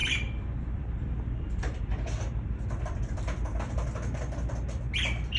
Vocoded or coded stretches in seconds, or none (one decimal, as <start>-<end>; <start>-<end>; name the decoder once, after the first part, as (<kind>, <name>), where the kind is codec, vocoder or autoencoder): 0.0-3.2 (vocoder, BigVGAN v2)